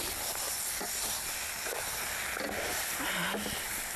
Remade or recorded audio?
recorded